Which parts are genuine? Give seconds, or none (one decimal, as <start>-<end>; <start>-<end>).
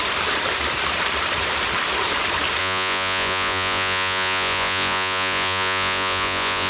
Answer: 0.0-2.6